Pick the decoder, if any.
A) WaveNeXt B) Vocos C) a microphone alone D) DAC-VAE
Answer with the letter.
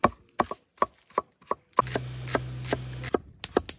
C